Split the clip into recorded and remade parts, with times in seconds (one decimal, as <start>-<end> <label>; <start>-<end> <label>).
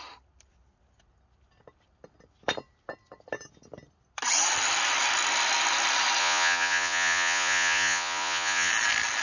0.0-6.2 recorded; 6.2-8.7 remade; 8.7-9.2 recorded